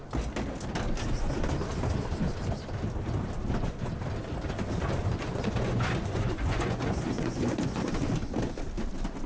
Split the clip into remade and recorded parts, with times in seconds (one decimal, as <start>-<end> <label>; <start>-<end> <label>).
0.0-5.0 recorded; 5.0-7.9 remade; 7.9-9.3 recorded